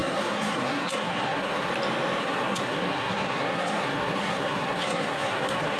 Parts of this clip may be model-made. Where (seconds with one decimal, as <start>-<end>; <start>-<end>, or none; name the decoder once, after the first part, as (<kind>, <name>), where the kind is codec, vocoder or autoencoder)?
0.0-1.7 (codec, SNAC); 2.2-5.8